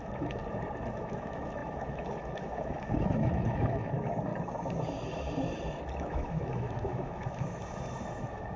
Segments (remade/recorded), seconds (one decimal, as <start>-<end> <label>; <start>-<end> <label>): 0.0-0.4 remade; 0.4-0.9 recorded; 0.9-4.3 remade; 4.3-6.1 recorded; 6.1-8.6 remade